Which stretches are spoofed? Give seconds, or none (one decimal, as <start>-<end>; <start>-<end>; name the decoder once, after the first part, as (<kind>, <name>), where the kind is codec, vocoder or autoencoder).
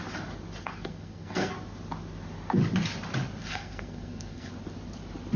0.6-1.5 (codec, SNAC); 3.4-4.5